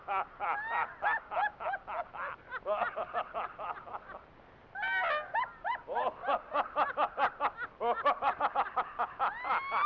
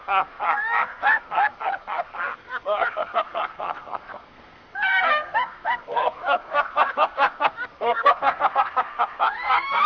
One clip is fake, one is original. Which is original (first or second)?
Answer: first